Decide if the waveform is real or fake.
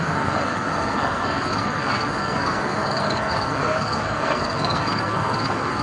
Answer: fake